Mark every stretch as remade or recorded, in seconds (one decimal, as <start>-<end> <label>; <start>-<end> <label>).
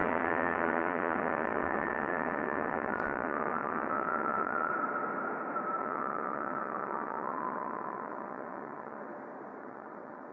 0.0-4.7 remade; 4.7-5.8 recorded; 5.8-9.1 remade; 9.1-9.6 recorded; 9.6-10.3 remade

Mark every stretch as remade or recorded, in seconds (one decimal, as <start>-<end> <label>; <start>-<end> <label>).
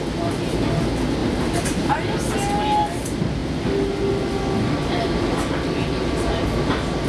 0.0-7.1 recorded